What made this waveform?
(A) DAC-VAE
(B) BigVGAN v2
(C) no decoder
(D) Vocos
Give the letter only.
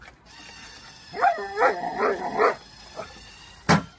C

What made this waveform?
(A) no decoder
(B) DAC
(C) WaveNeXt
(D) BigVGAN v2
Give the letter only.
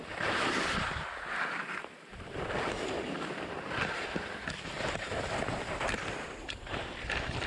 D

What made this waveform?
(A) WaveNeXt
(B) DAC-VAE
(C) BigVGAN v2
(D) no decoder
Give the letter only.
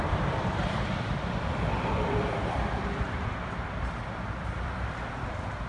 C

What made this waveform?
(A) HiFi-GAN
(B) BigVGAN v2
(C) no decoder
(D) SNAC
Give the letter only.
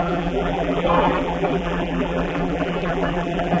B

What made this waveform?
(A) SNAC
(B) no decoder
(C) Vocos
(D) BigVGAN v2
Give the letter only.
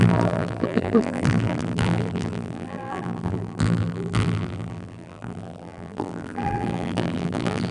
D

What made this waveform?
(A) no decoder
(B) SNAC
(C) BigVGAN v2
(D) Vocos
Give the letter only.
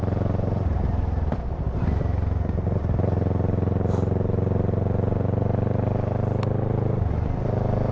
A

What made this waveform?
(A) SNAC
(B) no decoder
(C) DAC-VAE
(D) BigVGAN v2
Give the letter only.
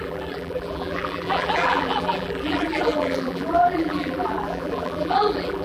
D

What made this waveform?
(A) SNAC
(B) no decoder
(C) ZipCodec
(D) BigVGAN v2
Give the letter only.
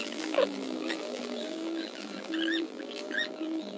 D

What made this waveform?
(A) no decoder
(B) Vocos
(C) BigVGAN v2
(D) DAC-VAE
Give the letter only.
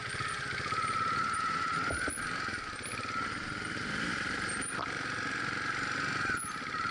A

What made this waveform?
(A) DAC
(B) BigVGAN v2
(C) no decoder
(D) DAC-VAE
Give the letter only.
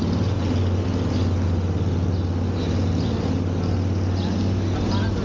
C